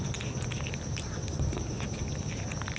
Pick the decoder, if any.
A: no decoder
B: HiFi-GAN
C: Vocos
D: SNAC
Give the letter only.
A